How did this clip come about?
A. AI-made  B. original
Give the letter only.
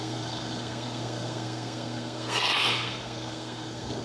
A